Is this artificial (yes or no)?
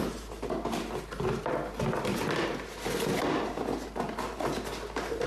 no